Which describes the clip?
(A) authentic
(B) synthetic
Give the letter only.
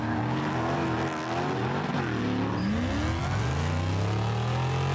A